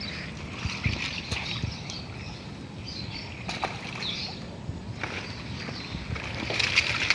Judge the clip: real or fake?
real